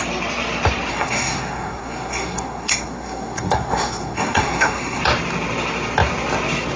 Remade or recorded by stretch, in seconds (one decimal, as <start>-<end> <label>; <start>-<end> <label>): 0.0-0.9 recorded; 0.9-5.0 remade; 5.0-6.8 recorded